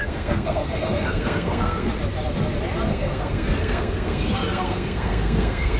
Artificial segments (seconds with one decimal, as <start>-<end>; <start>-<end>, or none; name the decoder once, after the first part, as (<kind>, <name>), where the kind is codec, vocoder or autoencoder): 0.0-1.9 (codec, SNAC); 2.9-5.8